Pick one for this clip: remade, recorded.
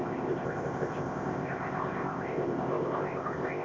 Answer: remade